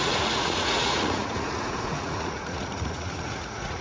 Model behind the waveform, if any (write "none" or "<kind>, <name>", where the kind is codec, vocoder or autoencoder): vocoder, Vocos